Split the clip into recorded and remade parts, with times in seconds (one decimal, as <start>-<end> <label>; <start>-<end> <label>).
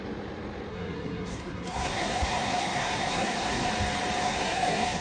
0.0-0.7 recorded; 0.7-3.7 remade; 3.7-4.2 recorded; 4.2-5.0 remade